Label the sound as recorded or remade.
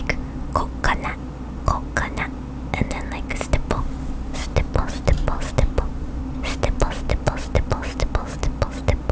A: recorded